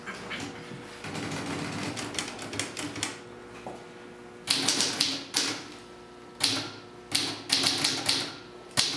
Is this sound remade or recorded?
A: recorded